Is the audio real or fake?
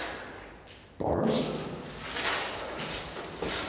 real